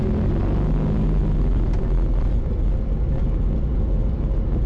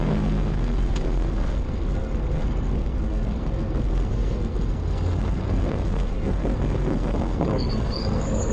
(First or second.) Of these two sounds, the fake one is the second